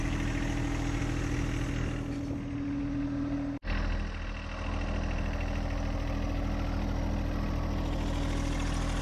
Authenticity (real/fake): real